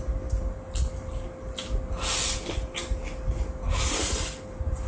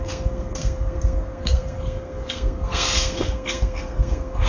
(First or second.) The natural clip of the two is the first